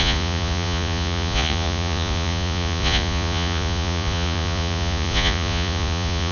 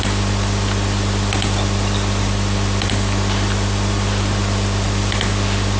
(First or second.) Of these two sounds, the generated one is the first